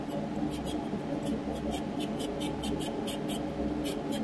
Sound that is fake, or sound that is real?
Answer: real